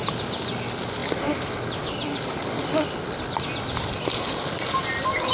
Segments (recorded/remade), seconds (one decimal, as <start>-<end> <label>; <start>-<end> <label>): 0.0-5.3 recorded